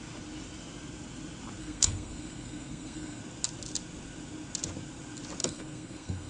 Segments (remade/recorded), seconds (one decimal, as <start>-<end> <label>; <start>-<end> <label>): 0.0-1.6 recorded; 1.6-3.2 remade; 3.2-5.4 recorded; 5.4-6.3 remade